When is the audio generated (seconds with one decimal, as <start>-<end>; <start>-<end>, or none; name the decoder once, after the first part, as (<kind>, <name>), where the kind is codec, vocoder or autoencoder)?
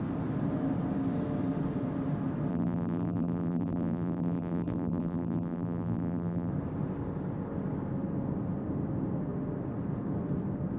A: 2.5-6.5 (vocoder, BigVGAN v2)